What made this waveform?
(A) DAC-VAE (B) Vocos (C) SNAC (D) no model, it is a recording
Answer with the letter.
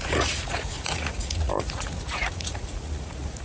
B